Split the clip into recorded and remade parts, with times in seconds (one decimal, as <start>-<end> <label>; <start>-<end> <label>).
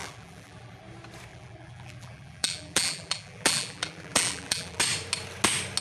0.0-0.8 remade; 0.8-1.3 recorded; 1.3-4.8 remade; 4.8-5.8 recorded